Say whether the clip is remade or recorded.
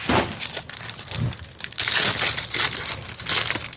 recorded